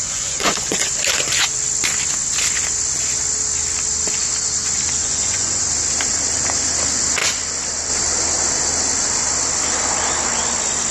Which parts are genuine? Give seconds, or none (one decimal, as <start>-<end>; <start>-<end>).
0.9-5.0; 5.6-10.9